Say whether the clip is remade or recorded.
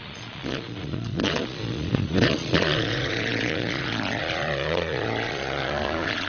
remade